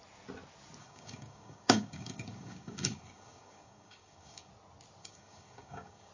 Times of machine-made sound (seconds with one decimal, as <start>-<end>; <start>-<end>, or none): 0.8-4.5; 5.0-6.1